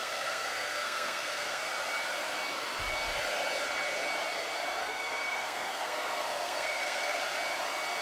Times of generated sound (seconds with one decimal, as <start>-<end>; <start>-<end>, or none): 0.0-1.7; 4.8-7.2